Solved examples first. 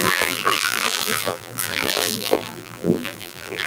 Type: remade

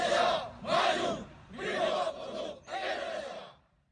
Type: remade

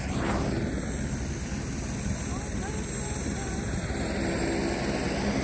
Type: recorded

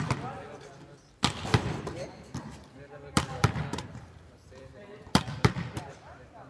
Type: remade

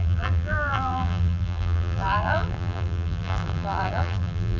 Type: remade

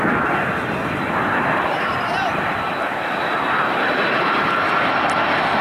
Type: remade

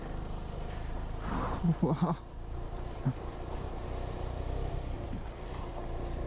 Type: remade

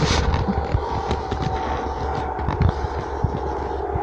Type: recorded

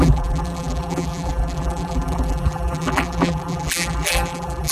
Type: remade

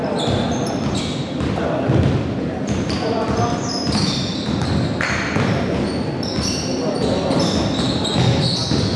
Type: recorded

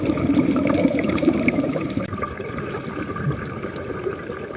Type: remade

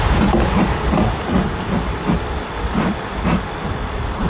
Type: remade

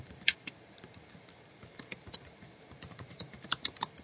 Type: remade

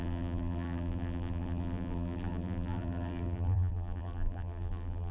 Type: remade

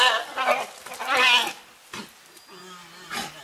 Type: recorded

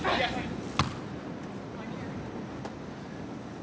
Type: recorded